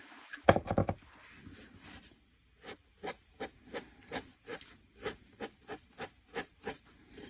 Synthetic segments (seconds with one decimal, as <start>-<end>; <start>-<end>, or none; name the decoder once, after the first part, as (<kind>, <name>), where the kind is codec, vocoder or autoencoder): 0.0-0.8 (vocoder, BigVGAN v2); 2.9-7.3